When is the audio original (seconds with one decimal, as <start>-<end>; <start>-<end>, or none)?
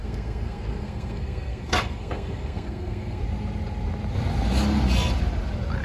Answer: 3.2-5.8